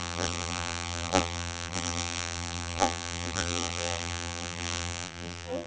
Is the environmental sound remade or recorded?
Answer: remade